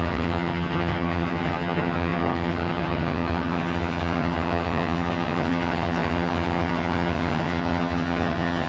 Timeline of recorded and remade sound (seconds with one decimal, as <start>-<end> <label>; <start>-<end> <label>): 0.0-8.7 remade